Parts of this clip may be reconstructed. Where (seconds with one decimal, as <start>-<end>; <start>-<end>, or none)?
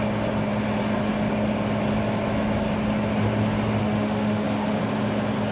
3.8-4.8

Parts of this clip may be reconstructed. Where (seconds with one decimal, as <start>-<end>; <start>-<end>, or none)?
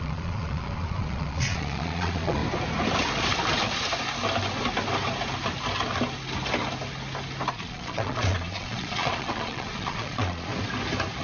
0.0-2.4; 7.5-10.5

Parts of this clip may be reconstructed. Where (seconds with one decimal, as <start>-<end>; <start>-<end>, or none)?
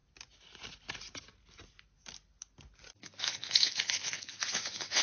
3.0-5.0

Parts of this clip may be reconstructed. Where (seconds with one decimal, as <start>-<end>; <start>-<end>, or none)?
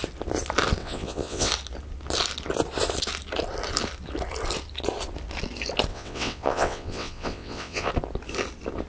0.8-1.5; 5.9-7.9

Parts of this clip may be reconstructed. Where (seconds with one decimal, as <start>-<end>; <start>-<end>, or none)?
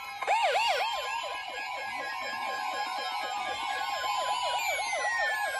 none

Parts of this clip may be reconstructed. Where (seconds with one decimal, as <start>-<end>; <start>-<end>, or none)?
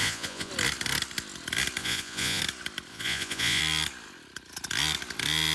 0.0-0.5; 1.8-2.4; 2.9-3.6